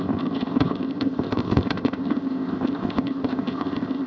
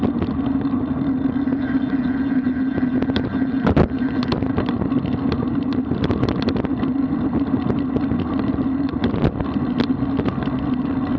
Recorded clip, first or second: second